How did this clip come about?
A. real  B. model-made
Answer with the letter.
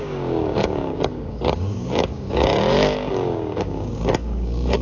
B